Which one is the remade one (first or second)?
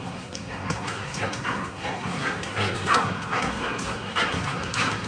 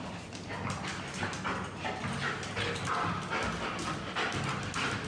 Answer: first